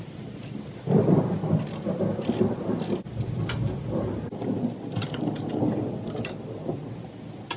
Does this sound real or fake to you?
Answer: real